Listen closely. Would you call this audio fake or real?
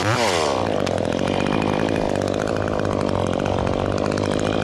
real